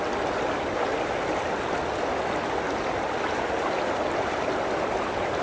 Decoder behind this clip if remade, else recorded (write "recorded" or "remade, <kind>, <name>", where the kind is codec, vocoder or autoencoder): recorded